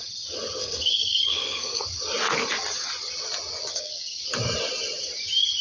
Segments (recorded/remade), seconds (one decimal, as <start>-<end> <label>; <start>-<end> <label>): 0.0-0.6 recorded; 0.6-1.8 remade; 1.8-3.7 recorded; 3.7-4.2 remade; 4.2-5.6 recorded